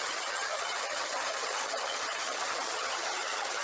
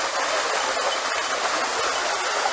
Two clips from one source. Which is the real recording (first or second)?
second